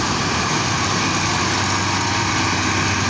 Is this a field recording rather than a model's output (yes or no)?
yes